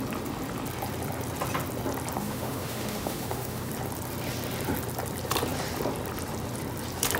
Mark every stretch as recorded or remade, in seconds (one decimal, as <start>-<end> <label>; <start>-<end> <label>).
0.0-2.2 recorded; 2.2-3.7 remade; 3.7-7.2 recorded